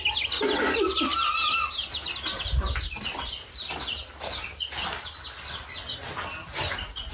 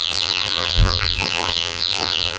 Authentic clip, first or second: first